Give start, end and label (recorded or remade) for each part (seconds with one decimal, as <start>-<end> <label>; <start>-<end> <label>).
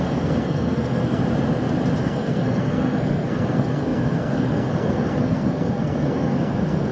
0.0-1.2 remade; 1.2-2.0 recorded; 2.0-6.9 remade